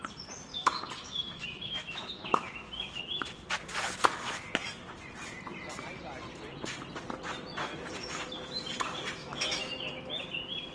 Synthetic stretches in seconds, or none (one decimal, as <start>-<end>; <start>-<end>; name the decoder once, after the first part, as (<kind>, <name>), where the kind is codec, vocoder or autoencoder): 0.5-3.0 (autoencoder, DAC-VAE); 9.2-9.7